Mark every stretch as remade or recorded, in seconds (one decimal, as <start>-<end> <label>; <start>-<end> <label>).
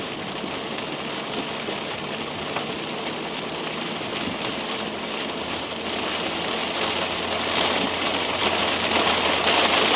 0.0-10.0 recorded